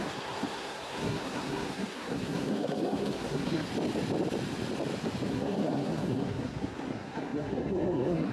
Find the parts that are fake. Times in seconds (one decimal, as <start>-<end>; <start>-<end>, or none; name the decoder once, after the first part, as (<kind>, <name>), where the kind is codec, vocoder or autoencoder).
0.0-3.7 (codec, SNAC); 5.3-8.3